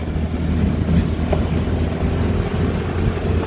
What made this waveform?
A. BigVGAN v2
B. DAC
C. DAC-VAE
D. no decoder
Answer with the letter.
D